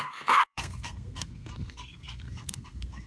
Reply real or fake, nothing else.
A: fake